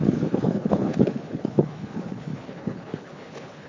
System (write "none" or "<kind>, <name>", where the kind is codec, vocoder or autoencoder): codec, HILCodec